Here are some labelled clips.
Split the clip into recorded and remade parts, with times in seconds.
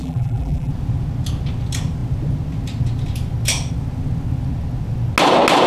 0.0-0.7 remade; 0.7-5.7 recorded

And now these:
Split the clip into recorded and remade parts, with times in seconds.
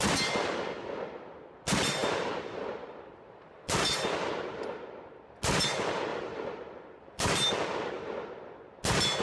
0.0-2.0 recorded; 2.0-4.3 remade; 4.3-6.1 recorded; 6.1-7.5 remade; 7.5-9.2 recorded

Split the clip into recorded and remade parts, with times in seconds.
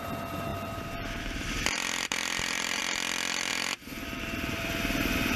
0.0-0.5 recorded; 0.5-2.8 remade; 2.8-3.5 recorded; 3.5-5.4 remade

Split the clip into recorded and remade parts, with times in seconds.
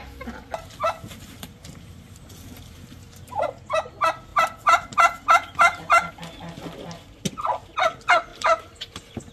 0.0-0.8 recorded; 0.8-3.3 remade; 3.3-4.3 recorded; 4.3-6.1 remade; 6.1-8.3 recorded; 8.3-9.3 remade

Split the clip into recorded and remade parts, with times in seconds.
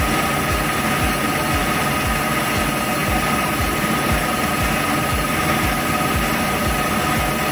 0.0-3.0 recorded; 3.0-4.2 remade; 4.2-7.5 recorded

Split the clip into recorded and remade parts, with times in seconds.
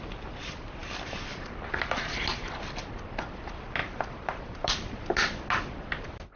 0.0-3.8 recorded; 3.8-5.1 remade; 5.1-6.4 recorded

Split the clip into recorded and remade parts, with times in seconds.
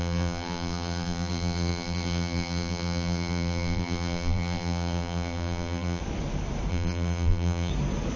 0.0-6.0 remade; 6.0-6.7 recorded; 6.7-7.7 remade; 7.7-8.2 recorded